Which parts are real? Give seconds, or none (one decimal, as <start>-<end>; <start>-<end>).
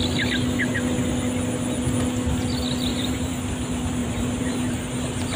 0.0-2.9; 3.5-4.0; 4.8-5.4